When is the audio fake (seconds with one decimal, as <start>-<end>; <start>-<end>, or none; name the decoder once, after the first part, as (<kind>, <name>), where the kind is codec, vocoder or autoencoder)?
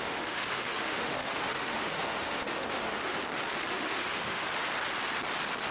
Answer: 0.0-3.2 (autoencoder, DAC-VAE); 3.7-4.5